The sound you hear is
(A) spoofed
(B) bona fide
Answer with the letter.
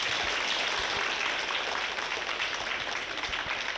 B